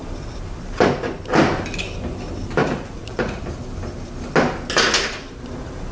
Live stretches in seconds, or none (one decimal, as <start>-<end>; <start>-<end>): 0.0-2.6; 3.4-5.9